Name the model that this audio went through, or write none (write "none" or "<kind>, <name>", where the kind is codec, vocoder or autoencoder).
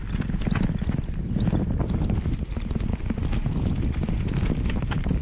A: none